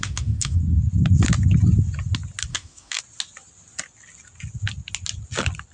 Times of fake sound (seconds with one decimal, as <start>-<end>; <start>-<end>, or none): 0.0-0.6; 2.5-3.0